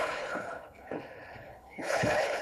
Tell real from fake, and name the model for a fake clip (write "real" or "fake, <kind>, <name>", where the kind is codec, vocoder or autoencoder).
fake, codec, HILCodec